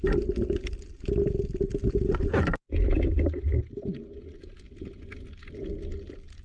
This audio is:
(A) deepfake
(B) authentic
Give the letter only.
B